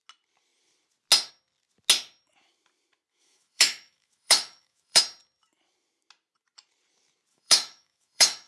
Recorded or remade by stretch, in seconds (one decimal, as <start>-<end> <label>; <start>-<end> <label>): 0.0-3.1 recorded; 3.1-5.0 remade; 5.0-7.3 recorded; 7.3-8.5 remade